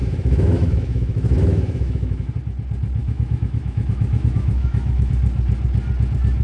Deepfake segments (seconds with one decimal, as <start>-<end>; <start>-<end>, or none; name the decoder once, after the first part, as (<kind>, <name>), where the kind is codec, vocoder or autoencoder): 0.0-2.3 (autoencoder, DAC-VAE); 3.0-5.1